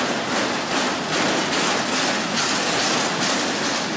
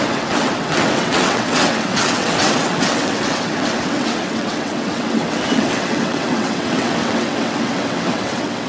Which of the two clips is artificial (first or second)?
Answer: second